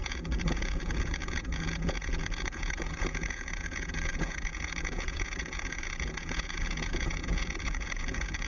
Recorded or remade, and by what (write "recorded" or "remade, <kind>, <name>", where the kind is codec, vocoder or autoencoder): remade, vocoder, Vocos